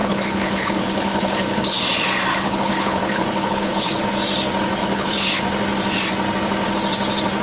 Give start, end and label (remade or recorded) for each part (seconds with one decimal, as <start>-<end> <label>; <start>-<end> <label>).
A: 0.0-1.8 remade; 1.8-2.3 recorded; 2.3-4.0 remade; 4.0-4.8 recorded; 4.8-5.4 remade; 5.4-7.4 recorded